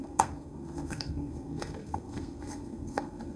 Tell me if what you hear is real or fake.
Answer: fake